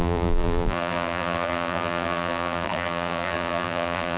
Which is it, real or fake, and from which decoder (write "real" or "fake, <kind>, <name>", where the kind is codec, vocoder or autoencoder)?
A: fake, vocoder, BigVGAN v2